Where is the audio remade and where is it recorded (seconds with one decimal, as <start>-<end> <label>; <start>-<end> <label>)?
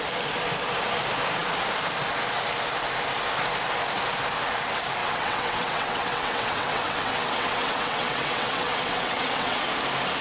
0.0-5.0 recorded; 5.0-9.7 remade; 9.7-10.2 recorded